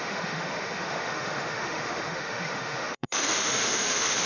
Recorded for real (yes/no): no